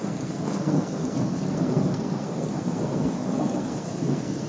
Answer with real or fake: fake